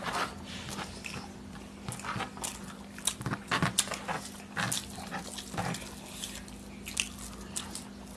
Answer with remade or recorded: recorded